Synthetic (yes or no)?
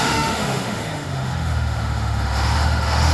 yes